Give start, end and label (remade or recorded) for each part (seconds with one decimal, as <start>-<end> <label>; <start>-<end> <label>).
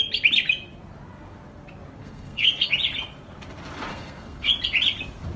0.0-2.0 recorded; 2.0-2.7 remade; 2.7-3.9 recorded; 3.9-4.5 remade; 4.5-5.4 recorded